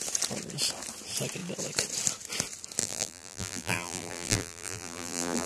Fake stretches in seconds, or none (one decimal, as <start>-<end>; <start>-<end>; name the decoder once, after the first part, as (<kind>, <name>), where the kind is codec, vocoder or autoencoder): 2.8-5.5 (vocoder, BigVGAN v2)